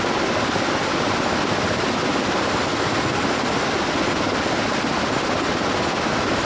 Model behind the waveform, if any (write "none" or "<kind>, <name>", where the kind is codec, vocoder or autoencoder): none